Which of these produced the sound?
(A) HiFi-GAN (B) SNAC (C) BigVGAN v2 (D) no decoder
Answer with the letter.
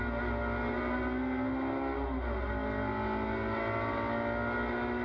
D